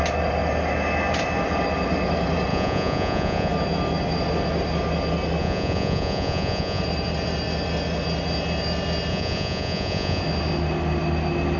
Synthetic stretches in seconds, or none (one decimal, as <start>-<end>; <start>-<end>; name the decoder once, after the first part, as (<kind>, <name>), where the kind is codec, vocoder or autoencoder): 2.5-3.5 (vocoder, Vocos); 5.4-6.8; 9.1-10.2